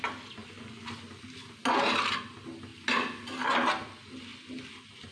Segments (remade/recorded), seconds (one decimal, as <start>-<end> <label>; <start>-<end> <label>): 0.0-5.1 recorded